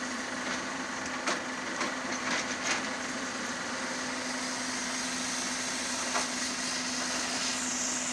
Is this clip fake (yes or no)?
no